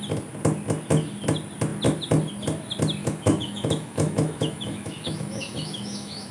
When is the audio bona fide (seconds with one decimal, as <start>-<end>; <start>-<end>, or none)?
0.0-3.0